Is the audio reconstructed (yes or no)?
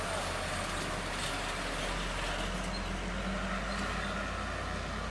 no